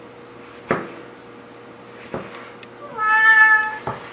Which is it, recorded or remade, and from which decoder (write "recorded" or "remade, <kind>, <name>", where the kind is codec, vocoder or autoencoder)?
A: recorded